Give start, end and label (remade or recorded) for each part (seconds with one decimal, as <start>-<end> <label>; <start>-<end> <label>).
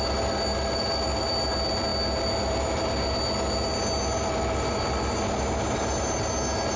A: 0.0-6.8 recorded